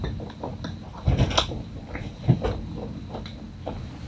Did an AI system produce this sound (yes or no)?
no